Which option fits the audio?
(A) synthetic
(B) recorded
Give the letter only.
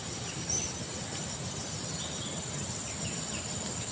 B